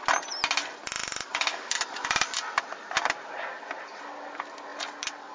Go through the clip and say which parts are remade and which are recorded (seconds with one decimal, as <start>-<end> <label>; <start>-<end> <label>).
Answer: 0.0-1.0 recorded; 1.0-3.6 remade; 3.6-4.7 recorded; 4.7-5.3 remade